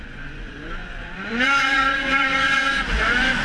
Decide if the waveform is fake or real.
fake